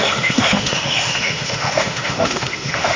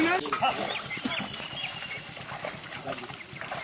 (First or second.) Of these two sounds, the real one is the second